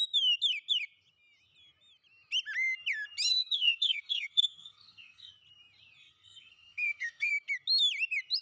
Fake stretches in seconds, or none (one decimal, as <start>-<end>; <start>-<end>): 3.3-5.3; 6.0-7.3